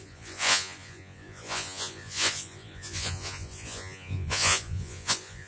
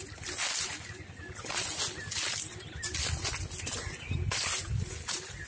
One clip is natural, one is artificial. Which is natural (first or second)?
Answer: second